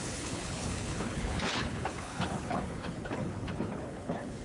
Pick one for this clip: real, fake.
fake